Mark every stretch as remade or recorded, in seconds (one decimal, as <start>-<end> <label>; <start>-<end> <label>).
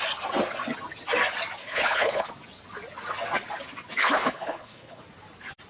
0.0-1.6 recorded; 1.6-2.3 remade; 2.3-4.0 recorded; 4.0-5.0 remade; 5.0-5.7 recorded